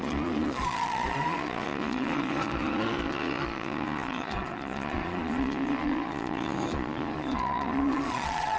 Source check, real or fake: fake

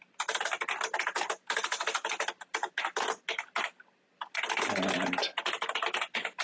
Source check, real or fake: real